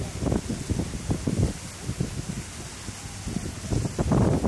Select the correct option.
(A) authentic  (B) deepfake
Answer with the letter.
A